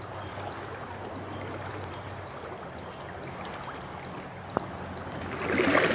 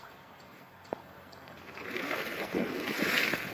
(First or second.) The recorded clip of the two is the first